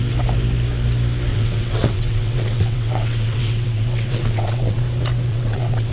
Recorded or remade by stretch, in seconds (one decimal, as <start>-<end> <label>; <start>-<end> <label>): 0.0-1.3 recorded; 1.3-4.8 remade; 4.8-5.3 recorded; 5.3-5.9 remade